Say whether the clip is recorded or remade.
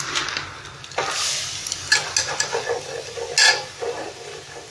recorded